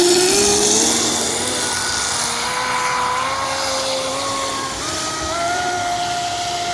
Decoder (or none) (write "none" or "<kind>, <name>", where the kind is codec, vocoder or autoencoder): none